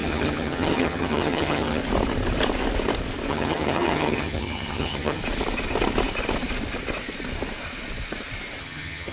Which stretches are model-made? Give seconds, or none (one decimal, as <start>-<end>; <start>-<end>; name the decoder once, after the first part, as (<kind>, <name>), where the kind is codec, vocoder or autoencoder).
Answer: 0.0-1.8 (vocoder, HiFi-GAN); 3.3-5.2; 8.6-9.1